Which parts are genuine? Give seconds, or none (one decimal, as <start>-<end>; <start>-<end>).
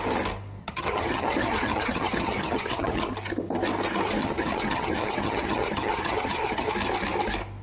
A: 0.0-0.6; 3.1-4.2; 6.7-7.6